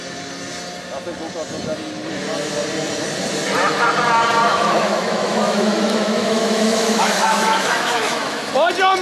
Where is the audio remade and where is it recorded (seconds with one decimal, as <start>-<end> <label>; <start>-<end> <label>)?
0.0-4.5 recorded; 4.5-8.5 remade; 8.5-9.0 recorded